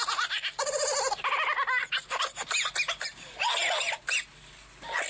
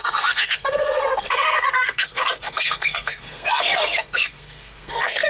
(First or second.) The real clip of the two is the first